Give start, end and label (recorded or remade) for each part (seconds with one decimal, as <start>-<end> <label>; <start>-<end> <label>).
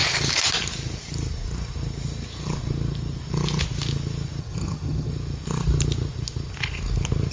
0.0-4.4 recorded; 4.4-5.1 remade; 5.1-7.3 recorded